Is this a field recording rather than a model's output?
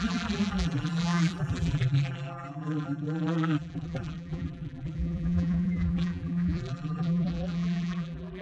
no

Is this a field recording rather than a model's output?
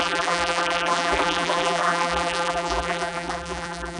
no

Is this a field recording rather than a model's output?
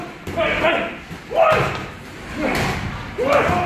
yes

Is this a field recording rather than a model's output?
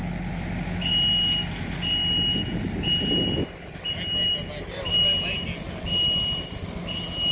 yes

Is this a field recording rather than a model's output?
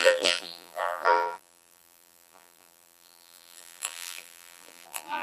no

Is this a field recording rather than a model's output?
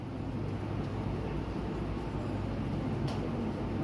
yes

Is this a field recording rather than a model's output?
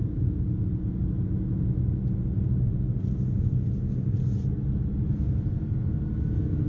yes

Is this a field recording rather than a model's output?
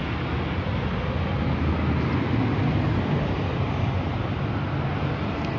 yes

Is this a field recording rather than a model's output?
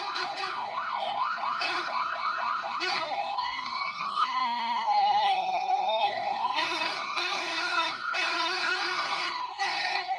no